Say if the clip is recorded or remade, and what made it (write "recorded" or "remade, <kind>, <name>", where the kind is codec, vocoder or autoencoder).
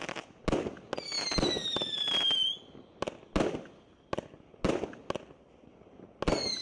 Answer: recorded